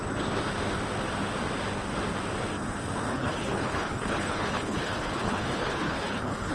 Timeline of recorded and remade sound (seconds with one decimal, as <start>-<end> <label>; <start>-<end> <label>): 0.0-3.1 recorded; 3.1-6.5 remade